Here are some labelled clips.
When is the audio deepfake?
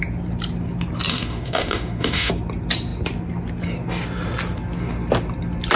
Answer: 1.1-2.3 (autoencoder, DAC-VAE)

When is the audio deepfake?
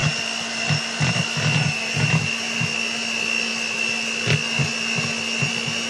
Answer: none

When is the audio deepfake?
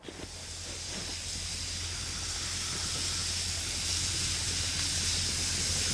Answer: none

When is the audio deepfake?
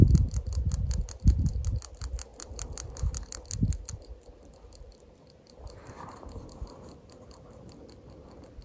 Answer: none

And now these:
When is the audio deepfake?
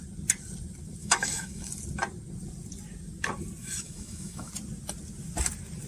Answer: 1.0-1.7 (autoencoder, DAC-VAE); 3.6-4.5